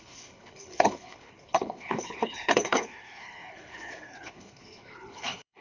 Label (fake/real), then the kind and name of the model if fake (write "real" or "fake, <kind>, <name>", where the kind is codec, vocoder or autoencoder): fake, codec, HILCodec